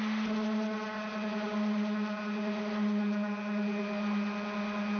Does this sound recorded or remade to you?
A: recorded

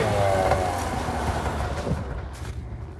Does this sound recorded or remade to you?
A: recorded